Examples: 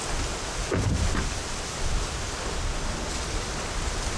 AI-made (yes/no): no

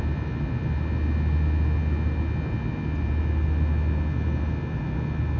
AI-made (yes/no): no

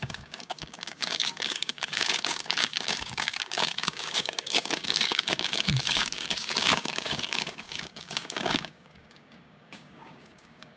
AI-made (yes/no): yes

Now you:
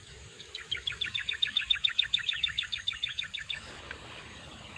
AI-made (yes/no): yes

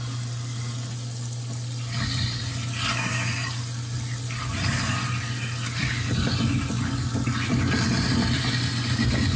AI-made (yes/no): no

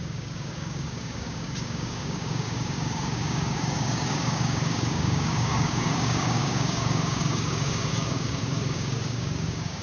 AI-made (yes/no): yes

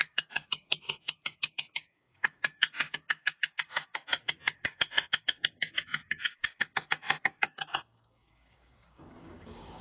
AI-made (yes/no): yes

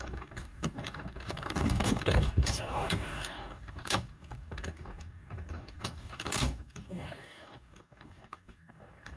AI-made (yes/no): yes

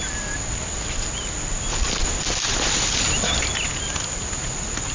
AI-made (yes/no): no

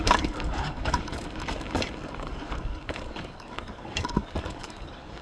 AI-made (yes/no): yes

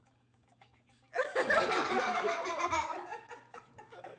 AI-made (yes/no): yes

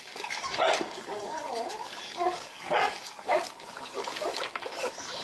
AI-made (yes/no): yes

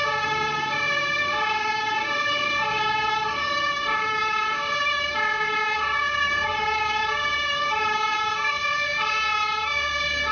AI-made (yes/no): yes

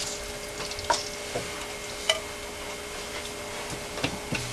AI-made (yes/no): no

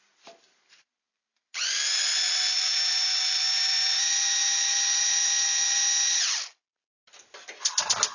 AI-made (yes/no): no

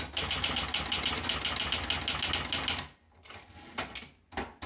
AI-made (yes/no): no